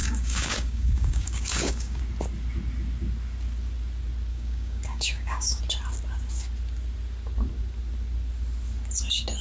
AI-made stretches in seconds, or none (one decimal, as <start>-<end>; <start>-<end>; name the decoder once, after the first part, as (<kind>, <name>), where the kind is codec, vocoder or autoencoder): 0.0-2.0 (codec, DAC); 4.3-5.6